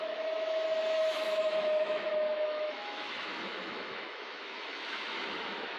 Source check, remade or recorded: remade